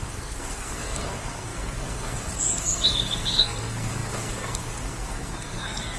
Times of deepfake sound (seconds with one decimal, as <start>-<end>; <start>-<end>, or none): 0.0-6.0

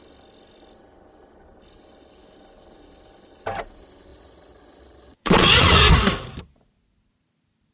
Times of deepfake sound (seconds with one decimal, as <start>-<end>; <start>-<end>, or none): 4.1-5.9

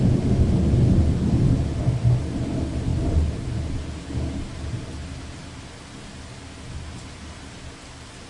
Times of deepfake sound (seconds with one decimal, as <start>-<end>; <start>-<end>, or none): none

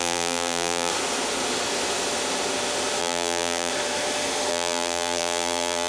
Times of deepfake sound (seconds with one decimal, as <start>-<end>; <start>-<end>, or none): 0.0-0.9; 3.0-3.7; 4.5-5.9

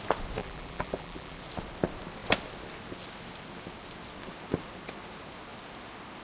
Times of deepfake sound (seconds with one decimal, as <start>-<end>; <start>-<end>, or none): 0.4-1.4

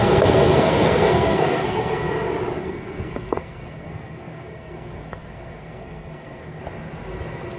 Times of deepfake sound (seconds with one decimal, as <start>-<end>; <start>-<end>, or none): 0.0-2.1; 2.6-6.6